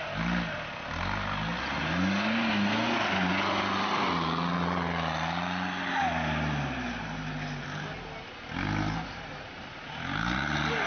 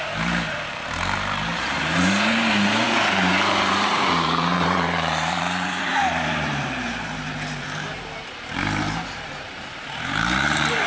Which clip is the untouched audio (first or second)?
first